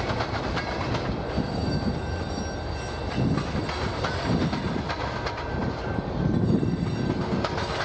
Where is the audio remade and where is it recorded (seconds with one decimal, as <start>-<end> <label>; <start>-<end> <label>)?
0.0-5.6 recorded; 5.6-6.8 remade; 6.8-7.8 recorded